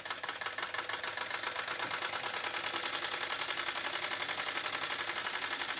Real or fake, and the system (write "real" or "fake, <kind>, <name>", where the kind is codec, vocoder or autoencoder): real